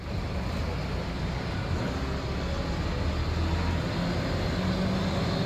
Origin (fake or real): real